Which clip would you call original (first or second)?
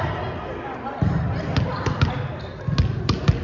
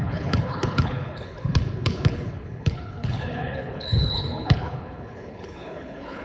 first